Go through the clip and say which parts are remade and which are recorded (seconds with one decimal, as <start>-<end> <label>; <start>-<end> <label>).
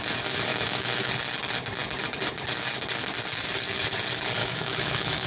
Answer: 0.0-0.5 recorded; 0.5-1.1 remade; 1.1-4.4 recorded; 4.4-5.3 remade